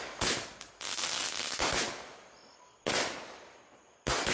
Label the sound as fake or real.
real